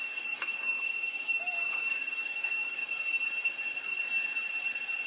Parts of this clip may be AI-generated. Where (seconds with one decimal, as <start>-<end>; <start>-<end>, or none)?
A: 0.0-2.8